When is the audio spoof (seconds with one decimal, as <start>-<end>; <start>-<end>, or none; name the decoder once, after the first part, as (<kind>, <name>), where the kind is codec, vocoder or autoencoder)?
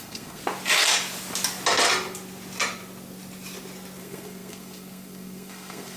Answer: 0.0-0.4 (codec, SNAC); 4.0-6.0